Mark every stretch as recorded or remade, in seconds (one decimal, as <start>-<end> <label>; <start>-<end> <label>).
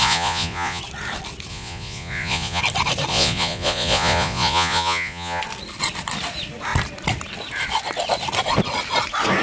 0.0-0.8 remade; 0.8-1.5 recorded; 1.5-2.6 remade; 2.6-3.1 recorded; 3.1-5.4 remade; 5.4-9.4 recorded